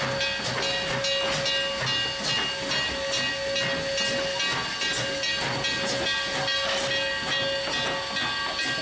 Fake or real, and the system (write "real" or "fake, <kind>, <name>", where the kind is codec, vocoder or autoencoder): real